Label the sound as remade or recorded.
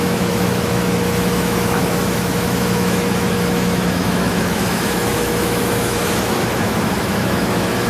remade